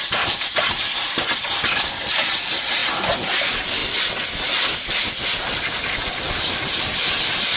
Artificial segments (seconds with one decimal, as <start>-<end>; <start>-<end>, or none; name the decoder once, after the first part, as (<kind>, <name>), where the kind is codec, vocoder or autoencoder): 0.0-2.8 (vocoder, BigVGAN v2); 3.4-3.8; 4.9-7.6